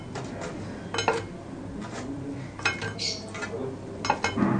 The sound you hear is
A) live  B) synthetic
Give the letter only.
A